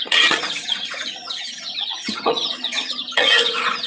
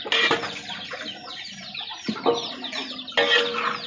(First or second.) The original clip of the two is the second